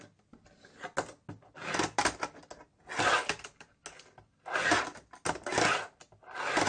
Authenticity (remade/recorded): recorded